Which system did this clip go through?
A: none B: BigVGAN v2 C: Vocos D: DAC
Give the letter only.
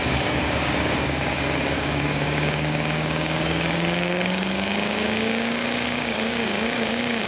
D